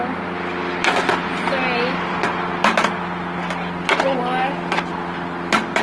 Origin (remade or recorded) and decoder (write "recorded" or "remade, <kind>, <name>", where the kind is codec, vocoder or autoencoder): recorded